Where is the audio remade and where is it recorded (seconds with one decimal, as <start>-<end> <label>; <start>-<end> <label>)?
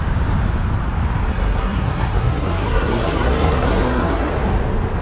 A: 0.0-1.3 recorded; 1.3-4.3 remade; 4.3-5.0 recorded